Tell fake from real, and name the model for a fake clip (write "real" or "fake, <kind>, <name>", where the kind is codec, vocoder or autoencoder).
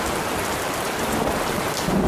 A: fake, vocoder, BigVGAN v2